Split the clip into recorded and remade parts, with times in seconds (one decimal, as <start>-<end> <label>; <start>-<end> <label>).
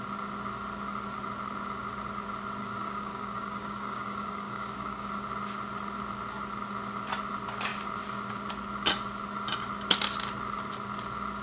0.0-2.6 recorded; 2.6-5.1 remade; 5.1-11.4 recorded